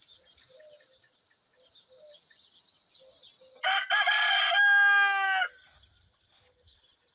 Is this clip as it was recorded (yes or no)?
yes